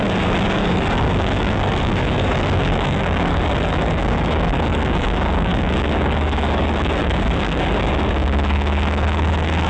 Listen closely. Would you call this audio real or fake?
fake